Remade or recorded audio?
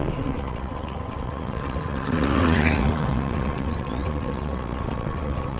remade